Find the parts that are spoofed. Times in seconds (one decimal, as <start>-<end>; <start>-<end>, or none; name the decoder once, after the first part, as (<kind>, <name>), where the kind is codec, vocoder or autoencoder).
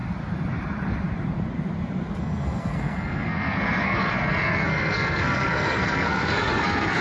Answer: 2.2-7.0 (codec, SNAC)